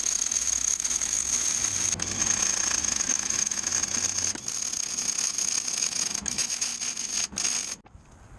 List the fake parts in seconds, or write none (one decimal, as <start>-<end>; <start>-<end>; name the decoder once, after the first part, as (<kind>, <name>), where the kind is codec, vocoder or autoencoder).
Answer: 0.0-1.2 (autoencoder, DAC-VAE); 2.8-3.7; 5.8-6.7